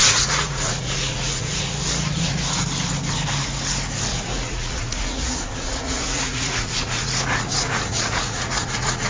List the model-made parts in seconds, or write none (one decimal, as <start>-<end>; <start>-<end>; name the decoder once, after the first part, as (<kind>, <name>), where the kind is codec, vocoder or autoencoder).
0.0-2.6 (vocoder, Vocos); 4.1-9.1